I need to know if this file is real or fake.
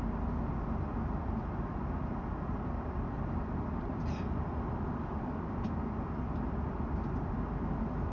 fake